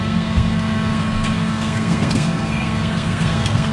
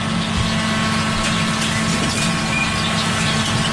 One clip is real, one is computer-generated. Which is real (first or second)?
second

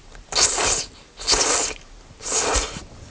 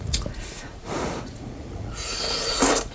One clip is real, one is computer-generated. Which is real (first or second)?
first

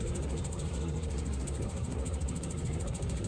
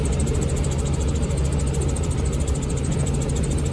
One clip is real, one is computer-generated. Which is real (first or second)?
second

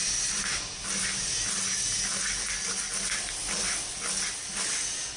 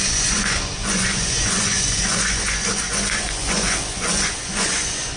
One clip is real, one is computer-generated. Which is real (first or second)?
first